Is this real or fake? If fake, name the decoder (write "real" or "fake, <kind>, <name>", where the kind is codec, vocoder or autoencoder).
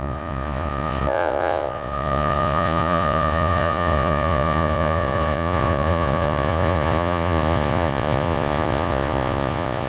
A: fake, vocoder, Vocos